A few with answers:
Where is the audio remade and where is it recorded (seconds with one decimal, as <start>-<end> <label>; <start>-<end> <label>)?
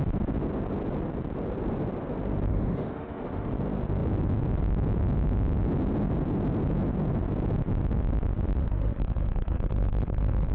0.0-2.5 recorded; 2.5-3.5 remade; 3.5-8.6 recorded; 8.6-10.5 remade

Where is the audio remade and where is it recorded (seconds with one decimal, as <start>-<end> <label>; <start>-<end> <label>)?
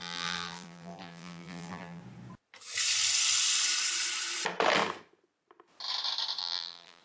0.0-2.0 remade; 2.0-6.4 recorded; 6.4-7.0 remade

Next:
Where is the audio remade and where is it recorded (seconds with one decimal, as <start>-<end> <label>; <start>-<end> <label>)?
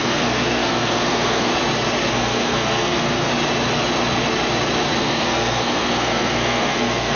0.0-1.5 remade; 1.5-2.1 recorded; 2.1-3.3 remade; 3.3-5.0 recorded; 5.0-7.2 remade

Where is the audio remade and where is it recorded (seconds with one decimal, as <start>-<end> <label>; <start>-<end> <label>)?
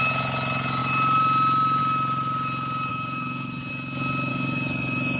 0.0-2.9 recorded; 2.9-3.7 remade; 3.7-4.3 recorded; 4.3-5.2 remade